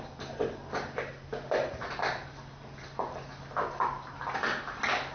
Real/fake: real